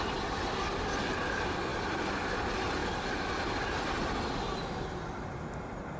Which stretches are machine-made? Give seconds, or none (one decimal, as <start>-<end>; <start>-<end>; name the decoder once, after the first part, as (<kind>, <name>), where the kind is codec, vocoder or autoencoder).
none